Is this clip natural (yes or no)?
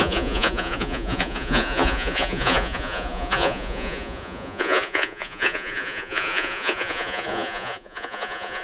no